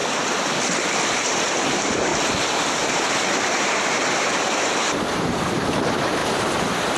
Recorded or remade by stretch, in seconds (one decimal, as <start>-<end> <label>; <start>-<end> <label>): 0.0-0.6 recorded; 0.6-2.1 remade; 2.1-3.4 recorded; 3.4-6.2 remade; 6.2-7.0 recorded